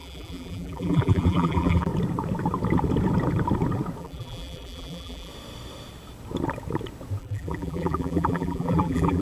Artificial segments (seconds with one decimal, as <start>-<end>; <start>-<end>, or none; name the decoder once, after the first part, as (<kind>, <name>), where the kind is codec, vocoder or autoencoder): 0.0-1.9 (vocoder, BigVGAN v2); 4.0-5.3; 7.2-9.2